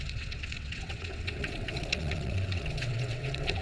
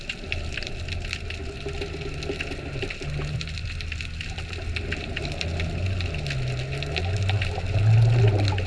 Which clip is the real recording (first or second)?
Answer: second